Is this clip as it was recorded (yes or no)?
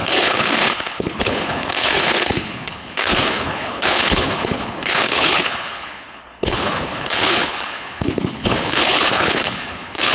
no